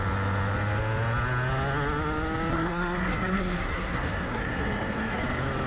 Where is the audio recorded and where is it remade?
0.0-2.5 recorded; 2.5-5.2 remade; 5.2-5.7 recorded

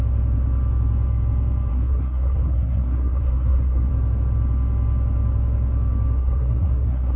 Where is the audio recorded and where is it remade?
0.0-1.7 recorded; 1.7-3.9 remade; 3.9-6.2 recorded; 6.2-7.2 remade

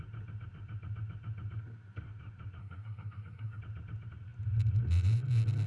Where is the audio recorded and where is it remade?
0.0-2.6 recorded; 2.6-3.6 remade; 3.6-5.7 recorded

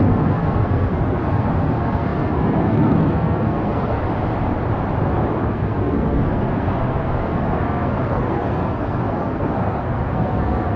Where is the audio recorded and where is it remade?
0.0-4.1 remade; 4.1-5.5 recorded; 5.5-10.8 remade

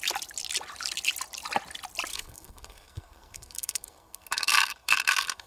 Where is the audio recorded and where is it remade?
0.0-2.1 recorded; 2.1-5.5 remade

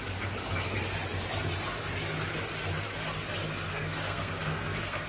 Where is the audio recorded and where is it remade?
0.0-3.7 recorded; 3.7-5.1 remade

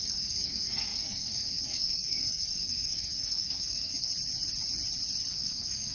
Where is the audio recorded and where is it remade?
0.0-4.1 remade; 4.1-5.3 recorded; 5.3-5.9 remade